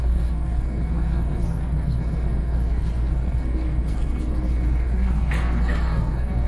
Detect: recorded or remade remade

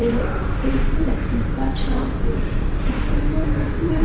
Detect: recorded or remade remade